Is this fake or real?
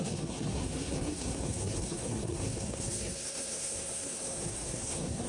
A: fake